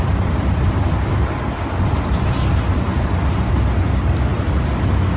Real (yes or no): yes